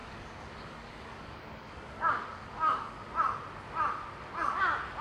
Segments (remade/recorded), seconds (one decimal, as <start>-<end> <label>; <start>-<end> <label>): 0.0-3.0 remade; 3.0-5.0 recorded